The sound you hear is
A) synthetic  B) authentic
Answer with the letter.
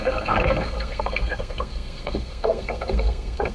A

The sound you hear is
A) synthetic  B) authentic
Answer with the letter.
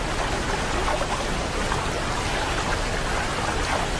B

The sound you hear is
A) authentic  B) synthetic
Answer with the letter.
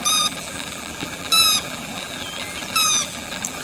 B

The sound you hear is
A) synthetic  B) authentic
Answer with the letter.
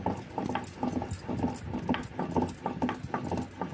B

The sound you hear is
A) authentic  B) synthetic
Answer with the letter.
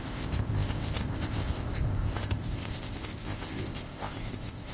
B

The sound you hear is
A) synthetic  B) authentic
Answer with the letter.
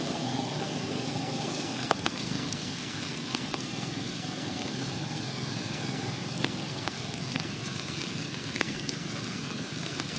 A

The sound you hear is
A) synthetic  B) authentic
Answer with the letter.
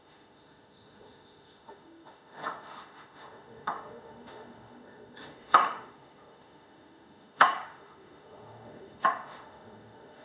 A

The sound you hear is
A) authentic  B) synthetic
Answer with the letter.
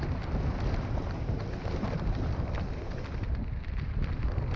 A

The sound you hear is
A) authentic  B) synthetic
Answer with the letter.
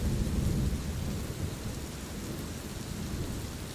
A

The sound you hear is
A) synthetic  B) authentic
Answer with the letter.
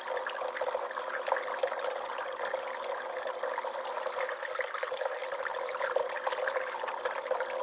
B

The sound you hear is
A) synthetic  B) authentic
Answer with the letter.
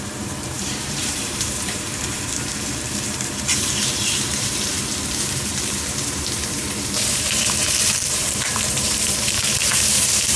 A